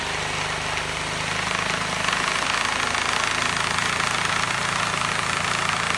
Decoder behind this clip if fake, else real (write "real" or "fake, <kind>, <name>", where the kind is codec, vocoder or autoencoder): real